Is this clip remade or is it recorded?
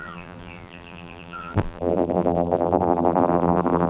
remade